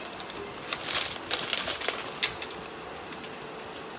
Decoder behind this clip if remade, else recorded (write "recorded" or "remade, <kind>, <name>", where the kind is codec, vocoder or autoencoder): recorded